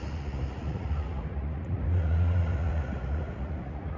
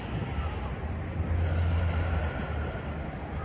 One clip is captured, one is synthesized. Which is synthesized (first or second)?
first